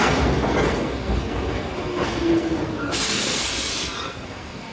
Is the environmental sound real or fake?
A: fake